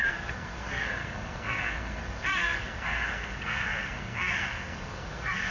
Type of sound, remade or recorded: remade